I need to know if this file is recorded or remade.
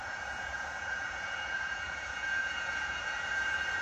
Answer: remade